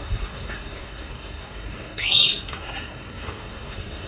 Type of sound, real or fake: fake